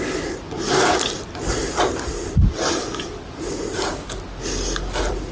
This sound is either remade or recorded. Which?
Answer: recorded